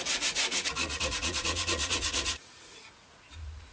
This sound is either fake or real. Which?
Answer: fake